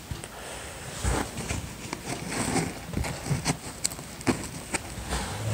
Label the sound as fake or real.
real